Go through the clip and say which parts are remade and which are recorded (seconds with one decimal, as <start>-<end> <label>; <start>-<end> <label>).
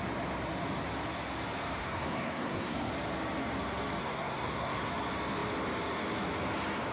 0.0-1.8 recorded; 1.8-2.9 remade; 2.9-4.0 recorded; 4.0-4.9 remade; 4.9-6.9 recorded